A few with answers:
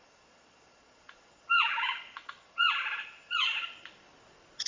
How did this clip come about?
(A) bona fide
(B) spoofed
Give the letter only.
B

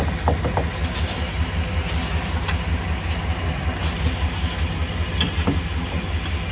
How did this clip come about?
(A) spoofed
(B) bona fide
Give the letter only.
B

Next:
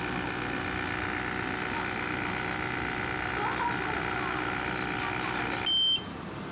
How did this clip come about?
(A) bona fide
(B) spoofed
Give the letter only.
A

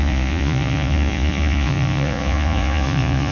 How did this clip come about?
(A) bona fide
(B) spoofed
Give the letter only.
B